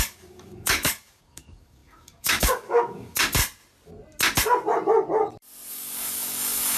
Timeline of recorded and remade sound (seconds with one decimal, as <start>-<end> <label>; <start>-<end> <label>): 0.0-3.4 remade; 3.4-5.7 recorded; 5.7-6.8 remade